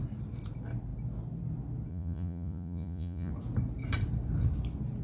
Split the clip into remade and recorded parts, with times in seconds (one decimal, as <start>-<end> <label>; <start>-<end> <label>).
0.0-1.9 recorded; 1.9-3.3 remade; 3.3-5.0 recorded